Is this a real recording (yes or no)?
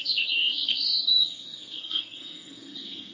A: no